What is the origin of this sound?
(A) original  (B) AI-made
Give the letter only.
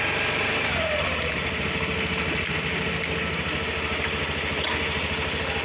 A